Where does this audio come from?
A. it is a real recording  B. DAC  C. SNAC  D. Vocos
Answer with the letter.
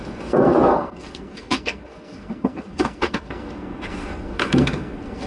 C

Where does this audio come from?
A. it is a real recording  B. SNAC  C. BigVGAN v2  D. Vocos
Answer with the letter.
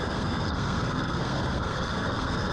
B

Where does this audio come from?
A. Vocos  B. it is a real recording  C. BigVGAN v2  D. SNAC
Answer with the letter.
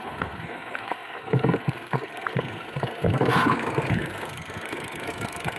D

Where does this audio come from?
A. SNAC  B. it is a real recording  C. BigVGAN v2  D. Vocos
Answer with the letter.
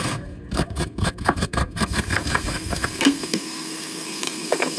A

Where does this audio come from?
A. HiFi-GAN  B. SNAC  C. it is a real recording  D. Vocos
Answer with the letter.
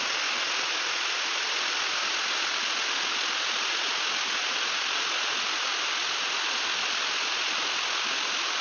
C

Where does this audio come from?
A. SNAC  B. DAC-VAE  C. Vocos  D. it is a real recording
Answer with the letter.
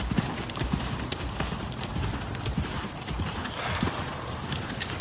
D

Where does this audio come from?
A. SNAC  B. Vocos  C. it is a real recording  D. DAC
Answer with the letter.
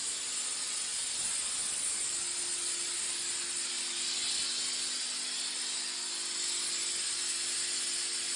C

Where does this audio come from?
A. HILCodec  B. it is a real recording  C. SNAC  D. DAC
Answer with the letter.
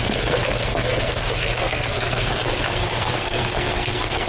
C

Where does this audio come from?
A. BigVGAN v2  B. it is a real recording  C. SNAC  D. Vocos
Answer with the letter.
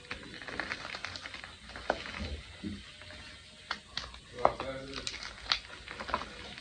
B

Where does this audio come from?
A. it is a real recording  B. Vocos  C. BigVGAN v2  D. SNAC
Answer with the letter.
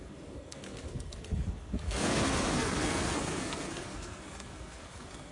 D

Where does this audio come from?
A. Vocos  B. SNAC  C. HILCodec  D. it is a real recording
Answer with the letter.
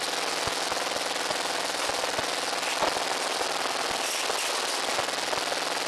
D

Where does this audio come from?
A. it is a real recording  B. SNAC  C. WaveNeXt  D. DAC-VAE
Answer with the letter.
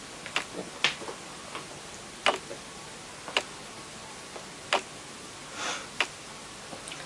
A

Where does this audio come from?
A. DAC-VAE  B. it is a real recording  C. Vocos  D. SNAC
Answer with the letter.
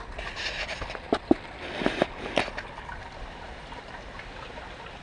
B